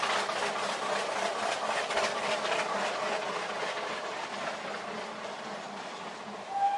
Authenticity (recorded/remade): recorded